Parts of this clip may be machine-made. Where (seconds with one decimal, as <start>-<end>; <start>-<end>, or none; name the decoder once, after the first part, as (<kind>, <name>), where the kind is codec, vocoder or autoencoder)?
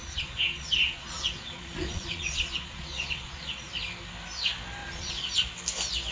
0.0-3.7 (vocoder, Vocos); 4.8-5.3